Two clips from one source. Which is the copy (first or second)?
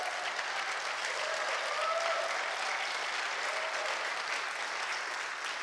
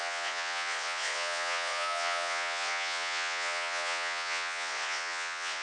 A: second